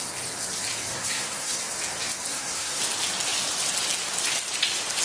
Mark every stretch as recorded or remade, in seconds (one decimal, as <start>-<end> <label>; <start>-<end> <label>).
0.0-0.9 recorded; 0.9-1.6 remade; 1.6-2.3 recorded; 2.3-2.8 remade; 2.8-5.0 recorded